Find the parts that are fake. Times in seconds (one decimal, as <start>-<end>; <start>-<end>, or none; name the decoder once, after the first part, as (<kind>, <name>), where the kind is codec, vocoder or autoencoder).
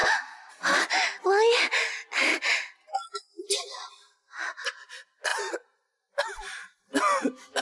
5.3-6.8 (vocoder, BigVGAN v2)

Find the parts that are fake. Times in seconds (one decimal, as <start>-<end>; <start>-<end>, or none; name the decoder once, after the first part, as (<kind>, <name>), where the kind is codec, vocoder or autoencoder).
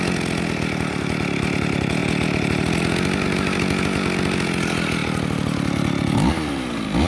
none